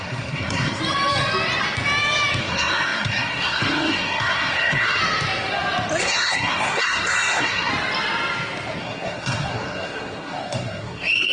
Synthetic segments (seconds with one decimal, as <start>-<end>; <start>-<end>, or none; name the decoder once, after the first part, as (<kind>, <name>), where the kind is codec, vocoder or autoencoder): 0.0-0.8 (codec, SNAC); 2.4-5.0; 6.0-7.7; 8.8-11.3